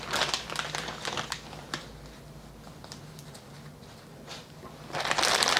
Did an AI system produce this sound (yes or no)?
no